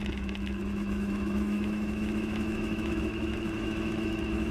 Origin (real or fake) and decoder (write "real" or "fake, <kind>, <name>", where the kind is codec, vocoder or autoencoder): fake, autoencoder, DAC-VAE